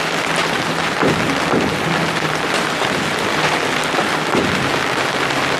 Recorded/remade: recorded